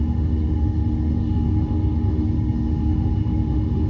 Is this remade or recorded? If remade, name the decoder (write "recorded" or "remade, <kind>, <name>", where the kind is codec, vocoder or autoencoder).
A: remade, autoencoder, DAC-VAE